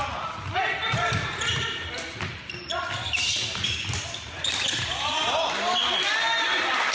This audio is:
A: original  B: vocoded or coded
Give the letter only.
A